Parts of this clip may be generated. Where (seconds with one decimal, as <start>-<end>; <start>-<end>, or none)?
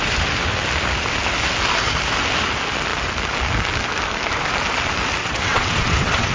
5.2-6.3